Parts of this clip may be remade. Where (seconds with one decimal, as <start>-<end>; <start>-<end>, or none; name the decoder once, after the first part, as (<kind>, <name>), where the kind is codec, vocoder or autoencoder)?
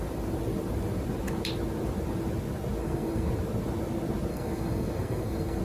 2.8-3.3 (codec, SNAC); 4.3-5.6